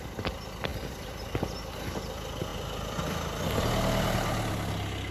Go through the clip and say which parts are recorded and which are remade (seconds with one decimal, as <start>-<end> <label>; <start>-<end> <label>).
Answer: 0.0-5.1 recorded